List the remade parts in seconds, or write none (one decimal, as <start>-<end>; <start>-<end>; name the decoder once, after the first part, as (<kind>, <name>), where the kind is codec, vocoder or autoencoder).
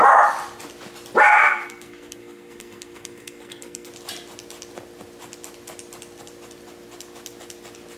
1.3-3.9 (codec, SNAC)